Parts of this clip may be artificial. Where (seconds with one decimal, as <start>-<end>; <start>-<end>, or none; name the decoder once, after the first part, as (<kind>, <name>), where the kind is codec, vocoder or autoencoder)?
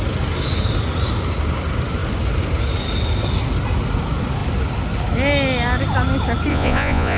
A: 6.5-7.2 (vocoder, Vocos)